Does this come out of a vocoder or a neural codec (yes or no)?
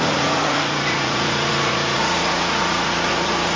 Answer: yes